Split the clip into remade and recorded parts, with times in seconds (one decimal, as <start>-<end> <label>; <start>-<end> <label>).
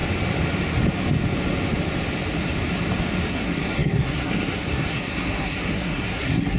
0.0-3.3 recorded; 3.3-6.6 remade